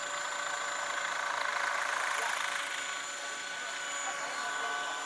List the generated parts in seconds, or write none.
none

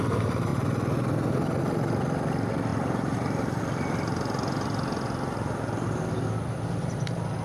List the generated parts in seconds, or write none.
2.7-3.6 (vocoder, BigVGAN v2)

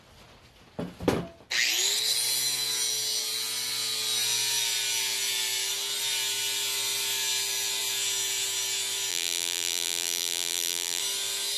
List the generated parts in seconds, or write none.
9.1-11.0 (vocoder, BigVGAN v2)

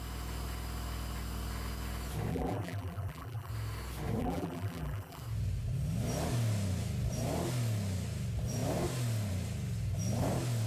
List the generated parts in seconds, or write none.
2.3-3.5 (vocoder, BigVGAN v2); 4.2-5.2